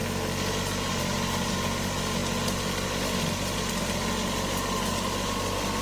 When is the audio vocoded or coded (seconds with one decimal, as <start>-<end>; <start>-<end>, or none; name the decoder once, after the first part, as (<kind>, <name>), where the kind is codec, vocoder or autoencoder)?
none